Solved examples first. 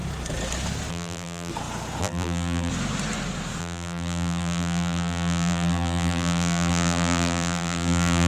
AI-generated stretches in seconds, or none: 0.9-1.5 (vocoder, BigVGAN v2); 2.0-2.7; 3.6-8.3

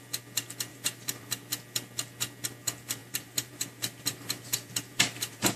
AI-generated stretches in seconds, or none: 0.7-1.5 (vocoder, BigVGAN v2); 3.0-5.6

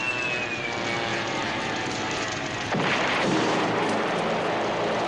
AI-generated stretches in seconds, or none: 1.1-4.2 (vocoder, BigVGAN v2)

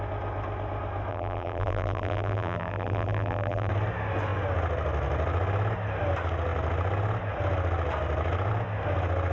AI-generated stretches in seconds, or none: 1.1-3.7 (vocoder, BigVGAN v2)

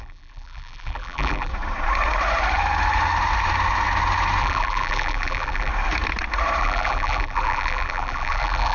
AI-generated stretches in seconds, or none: 0.0-1.5 (vocoder, BigVGAN v2); 4.4-5.7; 6.6-8.7

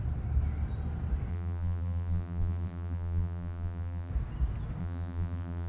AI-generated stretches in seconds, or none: 1.3-4.1 (vocoder, BigVGAN v2); 4.8-5.7

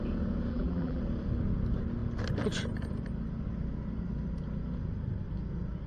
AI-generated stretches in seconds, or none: 0.5-1.0 (vocoder, BigVGAN v2)

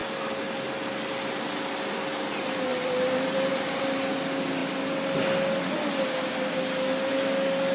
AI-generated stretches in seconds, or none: 2.7-3.8 (vocoder, BigVGAN v2)